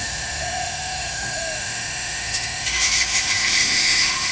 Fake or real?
fake